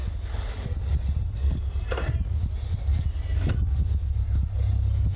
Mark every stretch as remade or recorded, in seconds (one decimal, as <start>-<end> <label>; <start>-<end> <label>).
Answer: 0.0-5.2 recorded